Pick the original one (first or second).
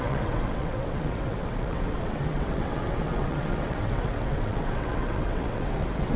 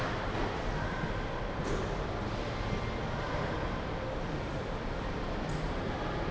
second